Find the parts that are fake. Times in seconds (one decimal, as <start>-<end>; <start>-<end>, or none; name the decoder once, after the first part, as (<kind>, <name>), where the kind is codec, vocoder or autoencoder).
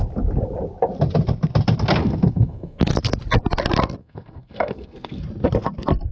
2.0-2.8 (codec, SNAC); 4.0-5.2